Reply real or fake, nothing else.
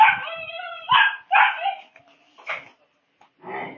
real